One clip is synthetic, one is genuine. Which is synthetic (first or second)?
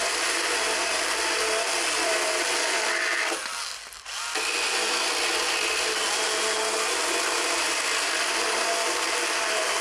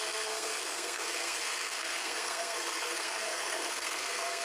second